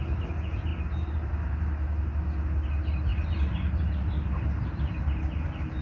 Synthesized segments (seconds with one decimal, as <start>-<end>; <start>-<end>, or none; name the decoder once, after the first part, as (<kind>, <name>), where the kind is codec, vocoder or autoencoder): 3.1-4.8 (vocoder, BigVGAN v2)